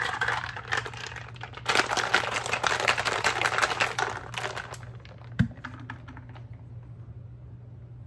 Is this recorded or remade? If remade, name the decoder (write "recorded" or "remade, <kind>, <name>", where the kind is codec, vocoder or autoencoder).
recorded